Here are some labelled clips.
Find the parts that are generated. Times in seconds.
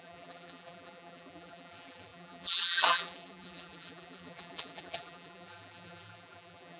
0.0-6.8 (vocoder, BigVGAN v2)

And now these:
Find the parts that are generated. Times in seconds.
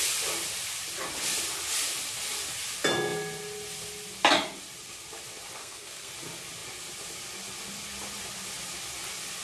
5.6-6.1 (codec, SNAC)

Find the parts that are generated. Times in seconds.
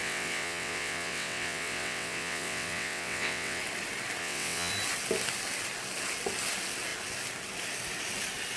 0.0-3.6 (vocoder, WaveNeXt); 4.2-4.7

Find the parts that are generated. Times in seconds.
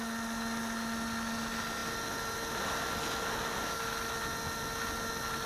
none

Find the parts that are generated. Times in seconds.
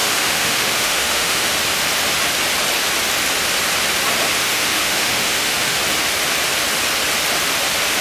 0.0-1.5 (autoencoder, DAC-VAE); 4.4-5.8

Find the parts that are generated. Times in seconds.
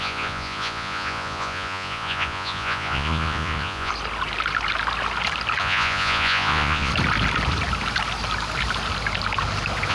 0.0-3.9 (vocoder, Vocos); 5.6-6.9